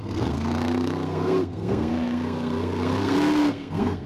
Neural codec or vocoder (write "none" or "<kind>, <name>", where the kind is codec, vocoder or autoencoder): codec, SNAC